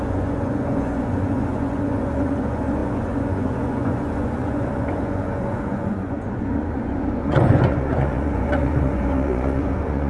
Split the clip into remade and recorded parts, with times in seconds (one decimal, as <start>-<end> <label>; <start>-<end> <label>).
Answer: 0.0-10.1 remade